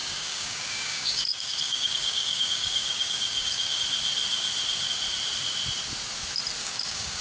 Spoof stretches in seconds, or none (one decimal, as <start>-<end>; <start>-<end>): 0.0-3.8; 6.6-7.2